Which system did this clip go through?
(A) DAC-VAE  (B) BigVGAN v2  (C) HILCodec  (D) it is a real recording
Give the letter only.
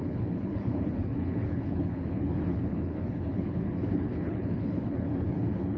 C